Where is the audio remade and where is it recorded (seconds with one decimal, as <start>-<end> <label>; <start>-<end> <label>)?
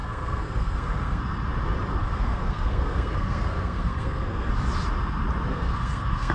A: 0.0-1.2 remade; 1.2-2.0 recorded; 2.0-4.5 remade; 4.5-5.5 recorded; 5.5-6.3 remade